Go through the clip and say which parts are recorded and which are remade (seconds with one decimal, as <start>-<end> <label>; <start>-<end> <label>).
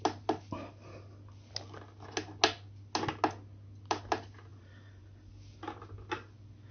0.0-4.5 recorded; 4.5-5.3 remade; 5.3-6.7 recorded